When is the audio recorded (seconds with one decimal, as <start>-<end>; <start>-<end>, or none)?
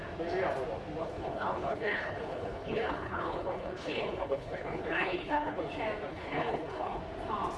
0.0-1.0; 5.6-6.1; 7.0-7.6